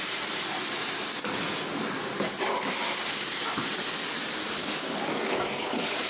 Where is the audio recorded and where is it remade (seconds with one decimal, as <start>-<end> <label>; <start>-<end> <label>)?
0.0-4.6 recorded; 4.6-6.1 remade